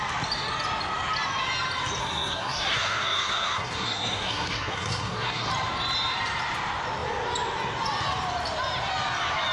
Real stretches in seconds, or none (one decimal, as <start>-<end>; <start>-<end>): 0.0-2.0; 5.5-9.5